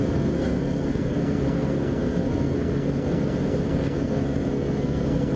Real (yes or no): no